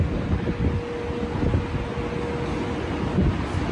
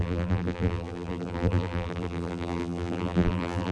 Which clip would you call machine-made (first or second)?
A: second